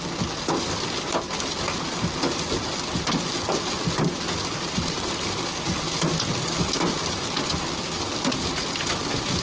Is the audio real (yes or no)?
yes